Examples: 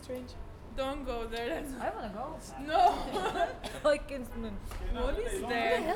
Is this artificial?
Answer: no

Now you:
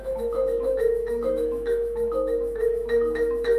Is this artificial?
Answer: yes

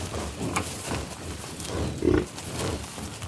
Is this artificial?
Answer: no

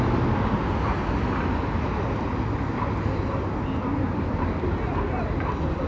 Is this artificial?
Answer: no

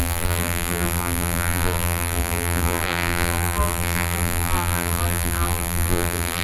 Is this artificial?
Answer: yes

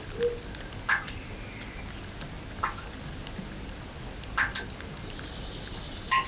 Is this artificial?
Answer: no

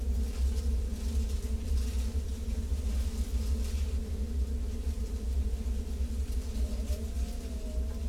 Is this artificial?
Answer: no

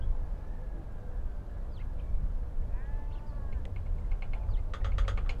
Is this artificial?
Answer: no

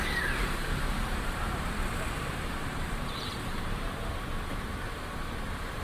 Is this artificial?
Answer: yes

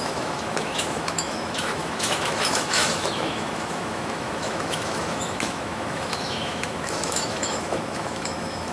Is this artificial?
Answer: yes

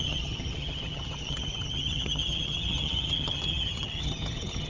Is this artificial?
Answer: yes